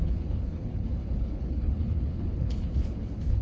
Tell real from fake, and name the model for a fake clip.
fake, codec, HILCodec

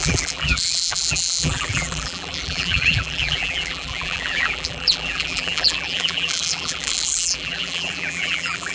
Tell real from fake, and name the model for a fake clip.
fake, vocoder, BigVGAN v2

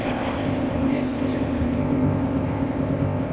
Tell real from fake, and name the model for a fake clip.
fake, codec, ZipCodec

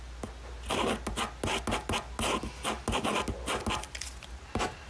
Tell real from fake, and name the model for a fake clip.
real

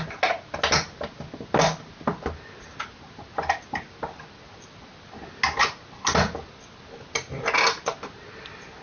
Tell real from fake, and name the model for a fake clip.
real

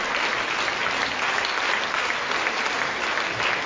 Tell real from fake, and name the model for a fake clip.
real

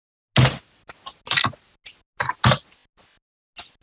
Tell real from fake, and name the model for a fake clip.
real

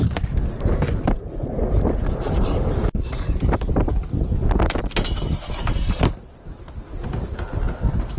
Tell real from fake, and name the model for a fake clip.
real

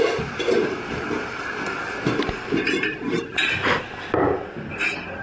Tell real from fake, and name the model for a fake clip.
real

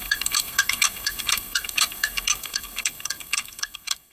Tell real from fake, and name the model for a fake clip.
fake, codec, SNAC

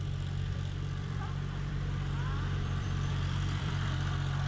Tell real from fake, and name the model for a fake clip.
fake, vocoder, BigVGAN v2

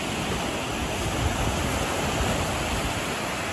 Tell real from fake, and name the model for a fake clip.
real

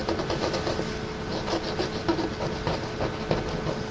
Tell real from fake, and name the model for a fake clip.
real